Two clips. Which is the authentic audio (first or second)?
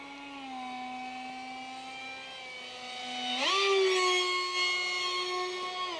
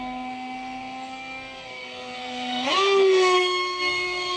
first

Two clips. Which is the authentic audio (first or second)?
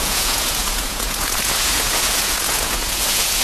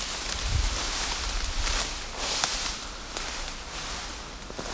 second